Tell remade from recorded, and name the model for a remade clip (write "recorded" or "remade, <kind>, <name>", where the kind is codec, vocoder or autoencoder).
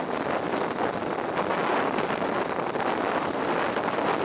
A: recorded